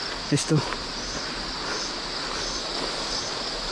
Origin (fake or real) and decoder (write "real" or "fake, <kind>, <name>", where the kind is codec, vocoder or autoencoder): real